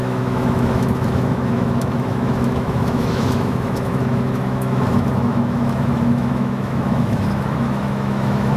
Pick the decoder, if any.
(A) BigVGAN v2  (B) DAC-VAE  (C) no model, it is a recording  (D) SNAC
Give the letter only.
B